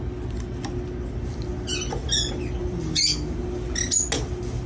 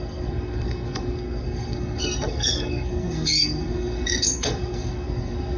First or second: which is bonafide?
first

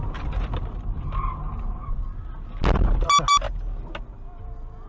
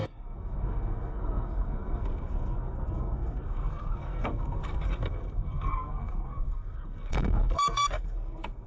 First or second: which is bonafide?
first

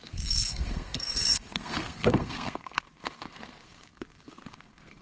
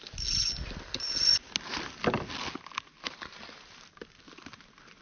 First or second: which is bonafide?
second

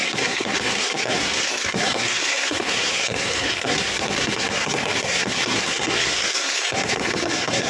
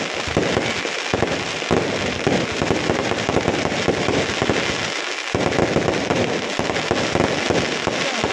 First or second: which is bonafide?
second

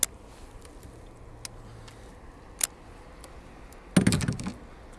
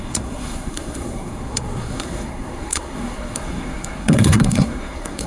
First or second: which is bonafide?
first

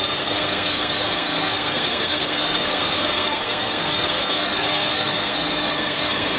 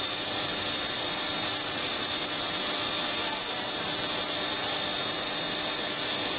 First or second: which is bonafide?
second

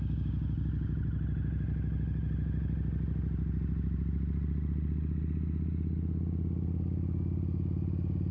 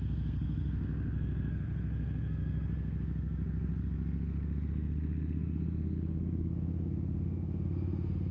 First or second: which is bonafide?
first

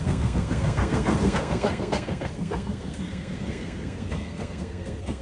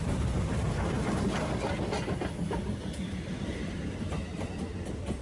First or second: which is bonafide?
second